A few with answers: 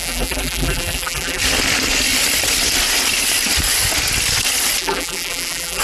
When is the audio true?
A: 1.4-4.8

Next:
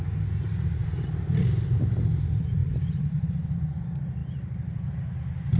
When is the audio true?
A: 0.0-0.8; 1.4-2.6; 3.4-4.2; 4.9-5.6

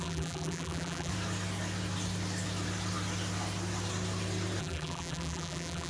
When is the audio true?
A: 1.1-4.6

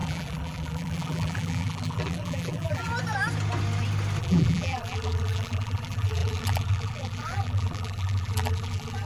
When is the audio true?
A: 2.9-4.2

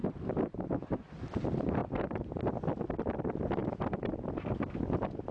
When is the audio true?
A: 1.1-1.8; 2.4-3.6; 4.2-5.3